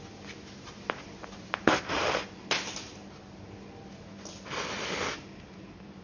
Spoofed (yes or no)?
no